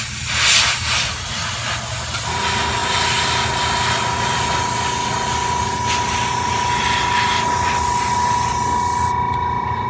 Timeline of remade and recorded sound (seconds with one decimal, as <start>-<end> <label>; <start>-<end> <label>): 0.0-9.9 recorded